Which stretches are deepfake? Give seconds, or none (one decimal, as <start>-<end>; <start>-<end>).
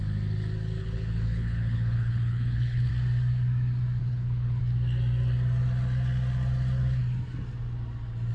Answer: 0.8-2.9; 4.0-4.6